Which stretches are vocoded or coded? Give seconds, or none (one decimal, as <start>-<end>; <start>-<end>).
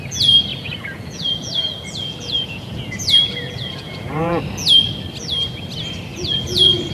0.5-4.4; 6.1-6.9